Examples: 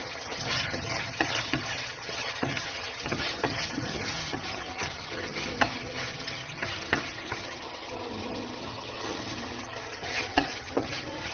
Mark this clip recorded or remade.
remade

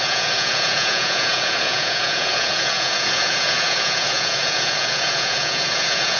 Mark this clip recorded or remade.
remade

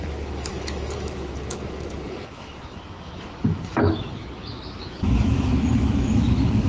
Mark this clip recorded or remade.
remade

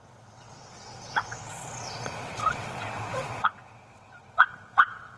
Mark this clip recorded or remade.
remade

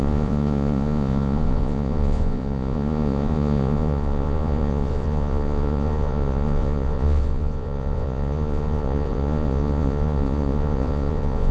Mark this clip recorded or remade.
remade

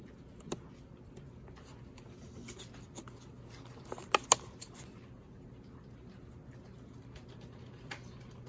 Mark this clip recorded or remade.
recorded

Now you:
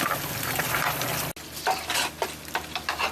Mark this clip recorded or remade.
recorded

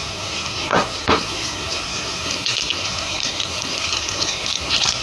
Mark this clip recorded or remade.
remade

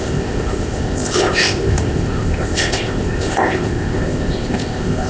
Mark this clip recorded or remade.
remade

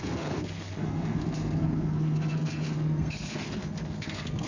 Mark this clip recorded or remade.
remade